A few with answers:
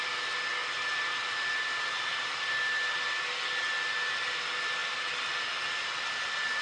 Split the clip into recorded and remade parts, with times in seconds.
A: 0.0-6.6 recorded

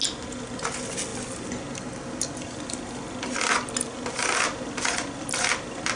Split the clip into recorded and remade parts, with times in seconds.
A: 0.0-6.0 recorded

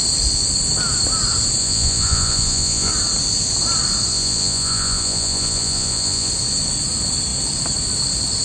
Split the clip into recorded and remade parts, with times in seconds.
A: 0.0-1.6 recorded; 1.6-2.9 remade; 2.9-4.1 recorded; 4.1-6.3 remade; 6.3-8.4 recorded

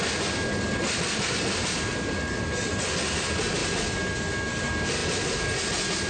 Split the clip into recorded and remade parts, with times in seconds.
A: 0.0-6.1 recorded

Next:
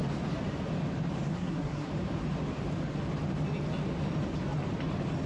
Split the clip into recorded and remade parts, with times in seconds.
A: 0.0-1.3 recorded; 1.3-1.9 remade; 1.9-5.3 recorded

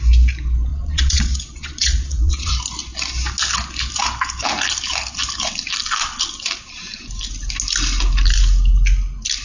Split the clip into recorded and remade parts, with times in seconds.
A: 0.0-0.7 recorded; 0.7-2.5 remade; 2.5-9.4 recorded

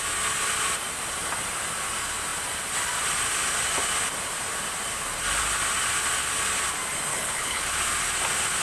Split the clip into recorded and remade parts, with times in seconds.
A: 0.0-7.1 recorded; 7.1-7.7 remade; 7.7-8.6 recorded